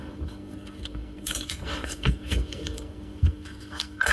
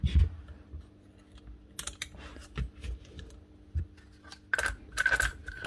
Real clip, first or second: second